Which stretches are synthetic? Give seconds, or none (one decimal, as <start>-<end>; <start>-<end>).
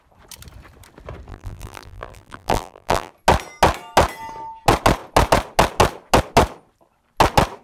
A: 1.3-3.1